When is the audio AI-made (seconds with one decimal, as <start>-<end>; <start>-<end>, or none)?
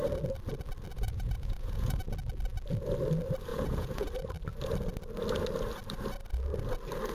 0.9-2.0; 3.5-4.1